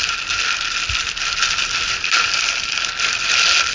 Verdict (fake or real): real